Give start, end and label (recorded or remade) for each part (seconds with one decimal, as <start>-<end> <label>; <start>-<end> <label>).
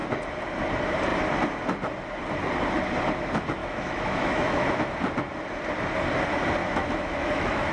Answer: 0.0-3.6 recorded; 3.6-4.9 remade; 4.9-6.6 recorded; 6.6-7.7 remade